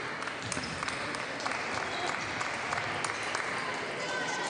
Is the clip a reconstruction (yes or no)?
no